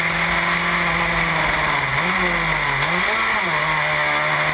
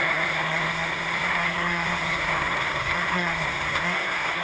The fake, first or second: second